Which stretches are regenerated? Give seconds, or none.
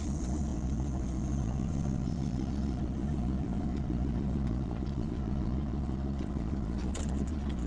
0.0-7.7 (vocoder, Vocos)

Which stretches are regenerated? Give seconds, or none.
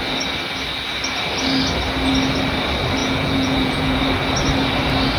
3.0-4.0 (vocoder, Vocos)